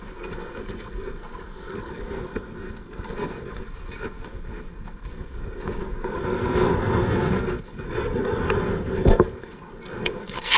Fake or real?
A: fake